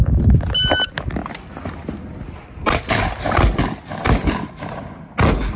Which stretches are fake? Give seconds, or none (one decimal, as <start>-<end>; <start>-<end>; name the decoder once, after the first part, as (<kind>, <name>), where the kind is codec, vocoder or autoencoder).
none